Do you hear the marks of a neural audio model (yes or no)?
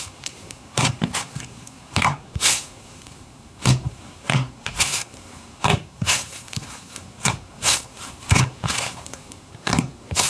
yes